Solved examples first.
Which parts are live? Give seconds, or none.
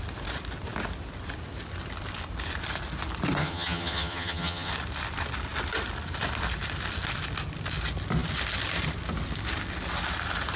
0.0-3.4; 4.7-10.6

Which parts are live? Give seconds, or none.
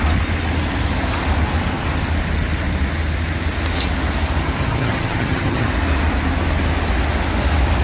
0.0-4.6; 5.7-7.8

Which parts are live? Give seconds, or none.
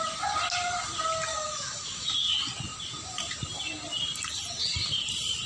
0.0-1.3; 2.1-5.5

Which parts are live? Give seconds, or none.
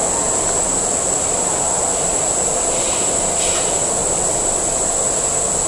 0.0-5.7